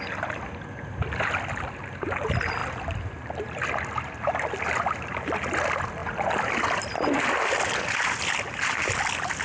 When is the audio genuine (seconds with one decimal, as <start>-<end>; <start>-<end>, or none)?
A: 0.0-9.4